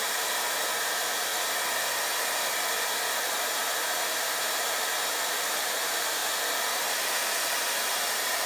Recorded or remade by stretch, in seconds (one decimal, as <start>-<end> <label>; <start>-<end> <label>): 0.0-1.3 remade; 1.3-3.2 recorded; 3.2-3.6 remade; 3.6-4.4 recorded; 4.4-6.2 remade; 6.2-7.6 recorded; 7.6-8.5 remade